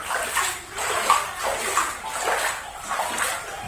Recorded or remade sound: recorded